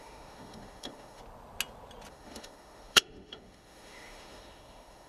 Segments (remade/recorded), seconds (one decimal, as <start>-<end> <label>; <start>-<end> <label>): 0.0-1.2 remade; 1.2-2.1 recorded; 2.1-5.1 remade